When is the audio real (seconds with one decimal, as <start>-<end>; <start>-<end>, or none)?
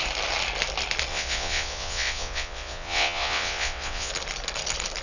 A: 0.0-1.1; 4.1-5.0